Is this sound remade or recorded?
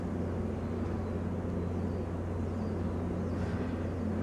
recorded